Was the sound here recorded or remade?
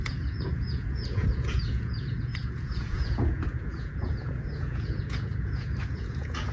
remade